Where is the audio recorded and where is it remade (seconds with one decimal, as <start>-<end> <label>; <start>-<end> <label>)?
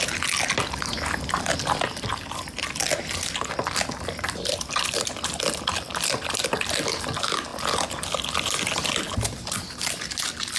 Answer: 0.0-10.6 recorded